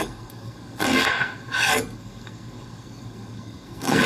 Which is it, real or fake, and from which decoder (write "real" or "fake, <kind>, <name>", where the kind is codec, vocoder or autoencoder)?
fake, codec, SNAC